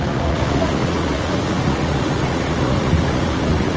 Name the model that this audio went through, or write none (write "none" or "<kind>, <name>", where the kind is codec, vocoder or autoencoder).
vocoder, Vocos